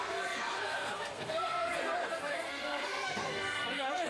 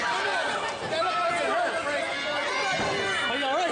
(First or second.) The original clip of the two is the second